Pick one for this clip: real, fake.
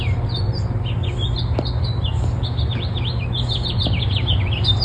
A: real